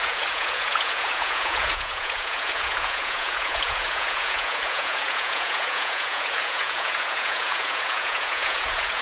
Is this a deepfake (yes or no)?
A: yes